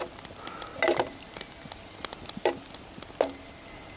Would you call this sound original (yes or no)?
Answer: yes